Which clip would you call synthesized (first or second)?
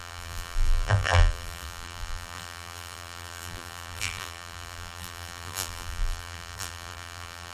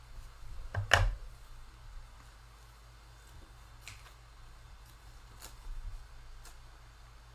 first